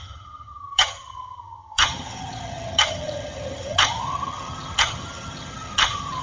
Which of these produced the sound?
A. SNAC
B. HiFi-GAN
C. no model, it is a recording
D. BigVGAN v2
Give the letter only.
B